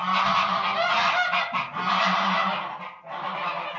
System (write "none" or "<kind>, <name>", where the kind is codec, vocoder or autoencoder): none